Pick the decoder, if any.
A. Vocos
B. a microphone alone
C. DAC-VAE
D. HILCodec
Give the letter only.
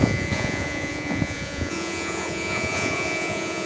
A